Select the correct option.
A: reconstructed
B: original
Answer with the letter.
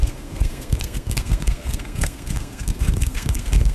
A